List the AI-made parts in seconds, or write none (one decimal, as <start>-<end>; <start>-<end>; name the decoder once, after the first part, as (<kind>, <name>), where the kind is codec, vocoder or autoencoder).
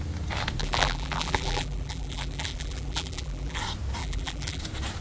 0.6-3.6 (vocoder, BigVGAN v2); 4.0-4.6